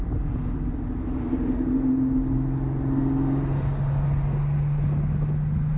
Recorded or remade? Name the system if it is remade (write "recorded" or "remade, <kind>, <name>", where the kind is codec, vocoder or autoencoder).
recorded